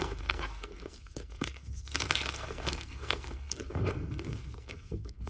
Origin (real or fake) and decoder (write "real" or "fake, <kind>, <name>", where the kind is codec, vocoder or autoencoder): fake, codec, SNAC